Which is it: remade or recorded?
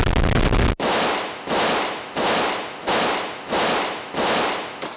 recorded